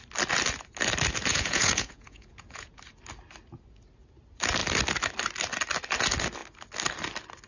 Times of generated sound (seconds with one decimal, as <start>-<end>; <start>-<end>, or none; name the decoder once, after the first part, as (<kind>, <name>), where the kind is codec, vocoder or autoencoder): 1.3-2.8 (vocoder, Vocos)